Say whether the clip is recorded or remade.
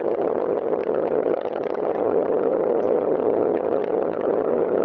remade